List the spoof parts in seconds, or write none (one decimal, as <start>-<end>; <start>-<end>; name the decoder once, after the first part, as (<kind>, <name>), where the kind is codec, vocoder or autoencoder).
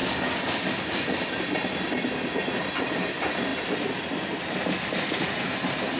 none